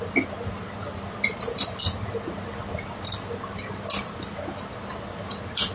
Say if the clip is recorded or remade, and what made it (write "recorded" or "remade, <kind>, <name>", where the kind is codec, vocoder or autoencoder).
recorded